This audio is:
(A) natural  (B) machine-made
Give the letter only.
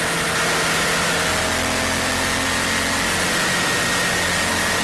A